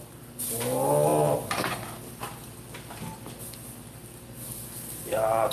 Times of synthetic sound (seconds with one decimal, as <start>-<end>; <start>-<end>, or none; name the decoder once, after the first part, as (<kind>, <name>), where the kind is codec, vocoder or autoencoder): 1.1-2.1 (vocoder, BigVGAN v2)